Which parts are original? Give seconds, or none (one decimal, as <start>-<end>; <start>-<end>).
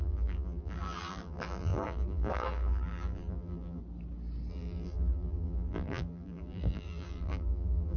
3.8-4.5